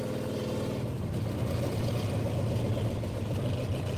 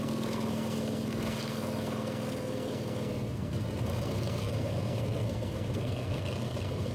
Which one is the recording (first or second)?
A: first